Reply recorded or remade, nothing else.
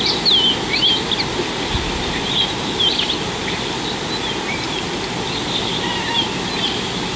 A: recorded